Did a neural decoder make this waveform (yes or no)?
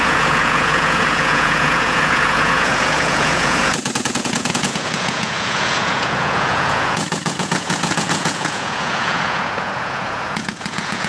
yes